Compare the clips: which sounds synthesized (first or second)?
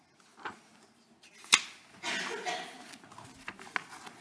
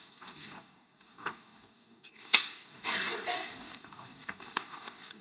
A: second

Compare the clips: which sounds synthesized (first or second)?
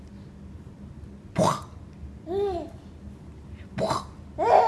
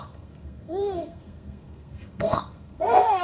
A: second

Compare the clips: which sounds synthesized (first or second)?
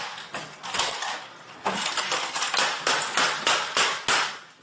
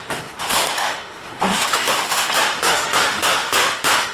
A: second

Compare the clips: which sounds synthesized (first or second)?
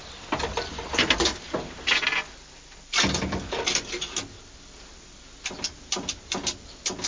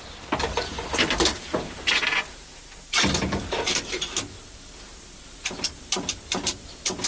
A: second